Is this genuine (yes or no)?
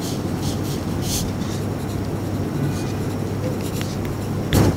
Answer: yes